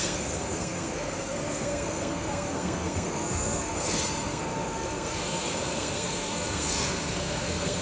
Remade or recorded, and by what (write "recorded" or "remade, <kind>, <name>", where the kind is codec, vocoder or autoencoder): remade, codec, SNAC